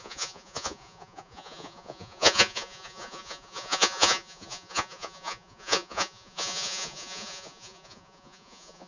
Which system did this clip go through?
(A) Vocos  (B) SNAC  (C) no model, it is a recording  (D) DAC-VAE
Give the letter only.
A